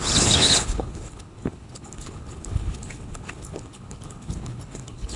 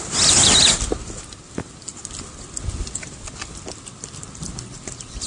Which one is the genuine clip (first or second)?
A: second